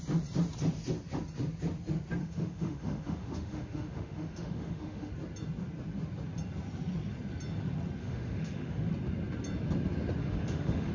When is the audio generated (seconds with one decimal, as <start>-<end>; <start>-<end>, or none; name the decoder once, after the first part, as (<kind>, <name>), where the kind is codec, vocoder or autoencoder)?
2.2-5.1 (autoencoder, DAC-VAE); 8.0-8.9; 10.2-10.9